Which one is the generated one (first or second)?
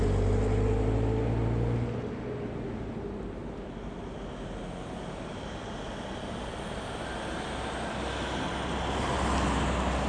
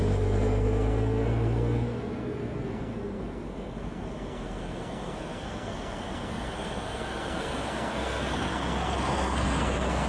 second